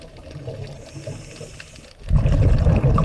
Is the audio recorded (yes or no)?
yes